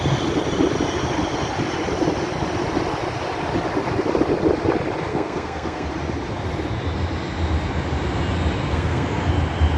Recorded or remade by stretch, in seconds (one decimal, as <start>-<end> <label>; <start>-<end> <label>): 0.0-5.1 recorded; 5.1-5.9 remade; 5.9-8.7 recorded; 8.7-9.3 remade; 9.3-9.8 recorded